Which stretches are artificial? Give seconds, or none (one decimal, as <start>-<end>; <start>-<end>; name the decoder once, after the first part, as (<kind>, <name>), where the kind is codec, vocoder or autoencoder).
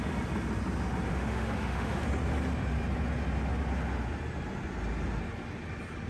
1.1-2.0 (autoencoder, DAC-VAE)